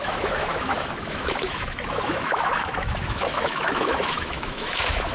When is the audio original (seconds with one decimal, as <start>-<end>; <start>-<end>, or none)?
none